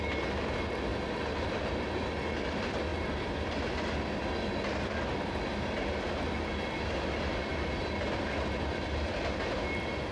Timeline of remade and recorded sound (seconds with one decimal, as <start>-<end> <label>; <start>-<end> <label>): 0.0-10.1 recorded